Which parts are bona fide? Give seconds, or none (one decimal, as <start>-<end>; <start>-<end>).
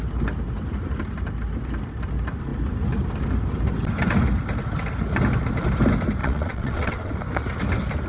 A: 0.0-6.2; 7.1-8.1